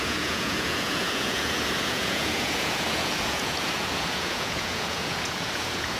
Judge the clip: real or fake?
fake